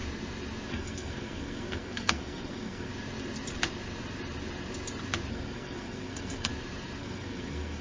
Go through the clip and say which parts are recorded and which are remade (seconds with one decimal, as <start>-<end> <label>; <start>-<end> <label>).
0.0-0.7 recorded; 0.7-2.9 remade; 2.9-5.3 recorded; 5.3-6.5 remade; 6.5-7.0 recorded; 7.0-7.8 remade